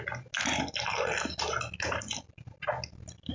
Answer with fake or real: real